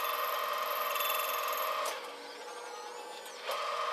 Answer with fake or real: real